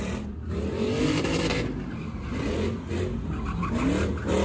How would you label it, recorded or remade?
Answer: recorded